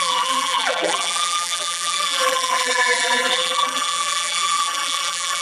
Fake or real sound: fake